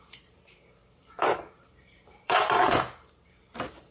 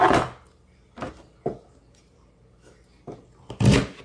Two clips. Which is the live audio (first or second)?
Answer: second